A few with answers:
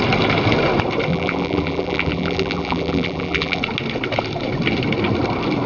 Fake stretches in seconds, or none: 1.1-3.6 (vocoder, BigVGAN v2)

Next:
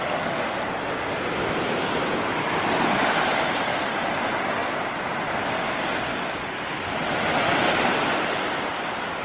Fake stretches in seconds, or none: none

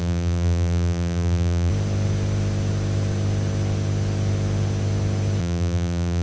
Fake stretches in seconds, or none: 0.0-1.7 (vocoder, BigVGAN v2); 5.4-6.2